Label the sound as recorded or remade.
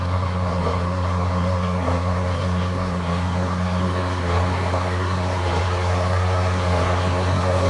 remade